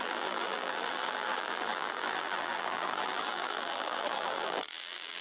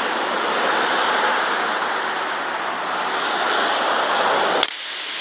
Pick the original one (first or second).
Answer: second